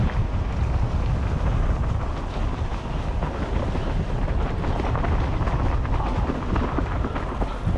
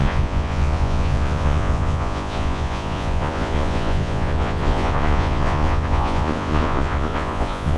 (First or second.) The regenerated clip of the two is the second